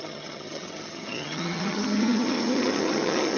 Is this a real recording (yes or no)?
no